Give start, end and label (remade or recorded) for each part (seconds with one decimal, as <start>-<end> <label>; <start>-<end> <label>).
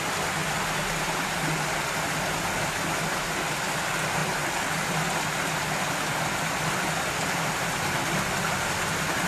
0.0-9.3 recorded